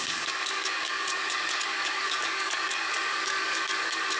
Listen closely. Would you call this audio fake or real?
fake